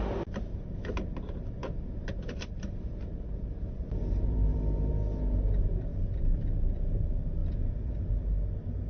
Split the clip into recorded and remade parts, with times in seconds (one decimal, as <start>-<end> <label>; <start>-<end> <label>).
0.0-1.6 recorded; 1.6-4.9 remade; 4.9-5.9 recorded; 5.9-6.4 remade; 6.4-7.4 recorded; 7.4-8.1 remade; 8.1-8.9 recorded